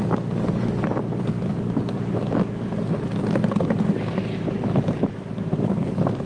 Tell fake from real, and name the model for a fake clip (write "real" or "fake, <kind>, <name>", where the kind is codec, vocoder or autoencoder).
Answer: fake, codec, DAC